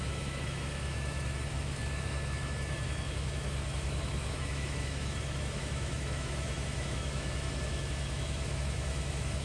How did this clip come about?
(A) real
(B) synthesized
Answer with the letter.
B